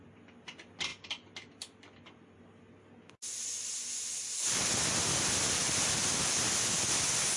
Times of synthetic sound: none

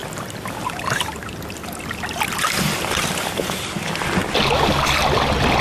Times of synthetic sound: 3.4-4.2 (vocoder, BigVGAN v2)

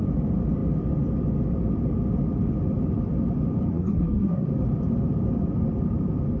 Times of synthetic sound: 3.7-4.5 (codec, SNAC)

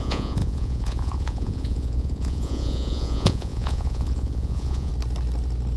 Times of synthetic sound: 0.0-4.9 (vocoder, Vocos)

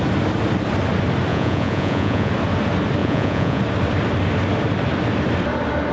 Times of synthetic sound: 1.3-2.3 (vocoder, Vocos); 3.0-3.6

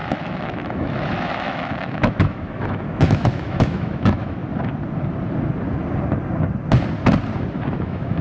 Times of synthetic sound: 0.0-4.4 (autoencoder, DAC-VAE); 7.7-8.2

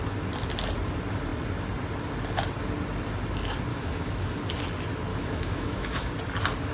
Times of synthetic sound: 3.7-4.4 (autoencoder, DAC-VAE); 5.1-6.1

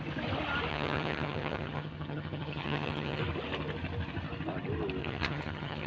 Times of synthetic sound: 0.7-3.2 (vocoder, HiFi-GAN); 5.0-5.9